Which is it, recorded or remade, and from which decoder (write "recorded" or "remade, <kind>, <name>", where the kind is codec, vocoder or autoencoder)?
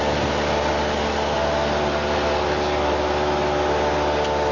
recorded